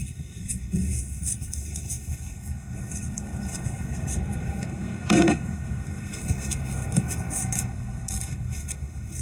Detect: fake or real fake